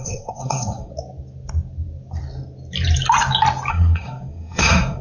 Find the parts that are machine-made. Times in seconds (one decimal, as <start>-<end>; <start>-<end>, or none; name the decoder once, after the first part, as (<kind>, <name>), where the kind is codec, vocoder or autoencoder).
0.0-0.9 (codec, SNAC); 3.7-5.0